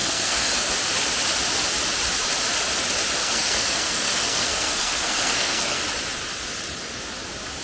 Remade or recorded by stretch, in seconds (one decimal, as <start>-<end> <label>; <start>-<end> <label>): 0.0-0.7 remade; 0.7-3.2 recorded; 3.2-5.8 remade; 5.8-7.6 recorded